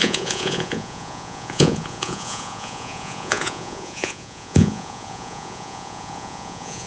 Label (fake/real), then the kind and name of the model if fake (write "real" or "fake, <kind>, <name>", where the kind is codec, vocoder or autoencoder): fake, vocoder, Vocos